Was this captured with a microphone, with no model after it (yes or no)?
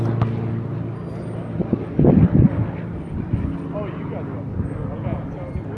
yes